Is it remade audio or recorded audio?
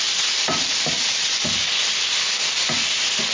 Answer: recorded